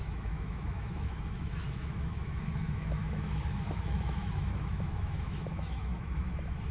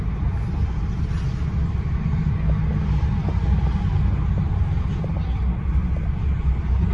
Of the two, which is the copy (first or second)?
first